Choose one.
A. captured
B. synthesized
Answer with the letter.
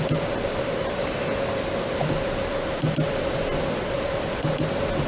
A